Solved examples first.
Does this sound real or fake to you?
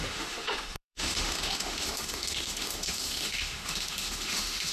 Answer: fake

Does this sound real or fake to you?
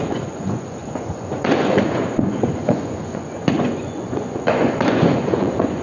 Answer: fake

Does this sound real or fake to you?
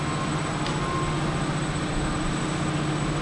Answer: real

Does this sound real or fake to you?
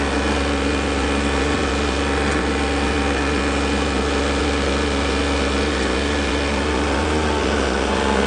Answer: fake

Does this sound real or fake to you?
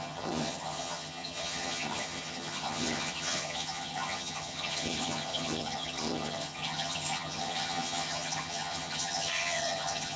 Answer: fake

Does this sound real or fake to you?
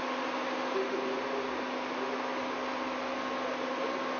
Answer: real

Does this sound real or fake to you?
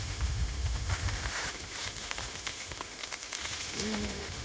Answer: fake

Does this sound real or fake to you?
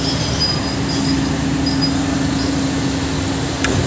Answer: real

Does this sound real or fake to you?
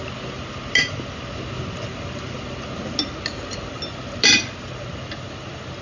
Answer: real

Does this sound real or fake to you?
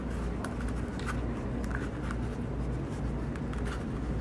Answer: real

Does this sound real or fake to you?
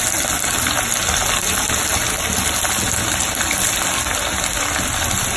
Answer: real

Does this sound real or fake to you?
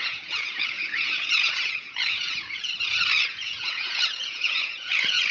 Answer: fake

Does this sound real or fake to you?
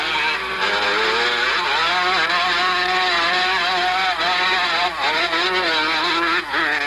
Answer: real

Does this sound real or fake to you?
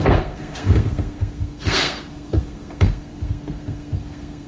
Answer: fake